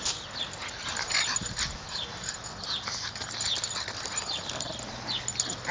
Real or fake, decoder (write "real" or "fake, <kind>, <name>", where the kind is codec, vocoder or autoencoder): real